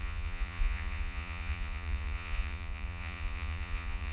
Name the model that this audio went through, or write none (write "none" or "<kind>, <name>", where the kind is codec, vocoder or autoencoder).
vocoder, Vocos